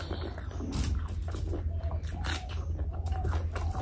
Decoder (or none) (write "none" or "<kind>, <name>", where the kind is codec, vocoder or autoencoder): none